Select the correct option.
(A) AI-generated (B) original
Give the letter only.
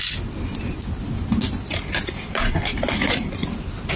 B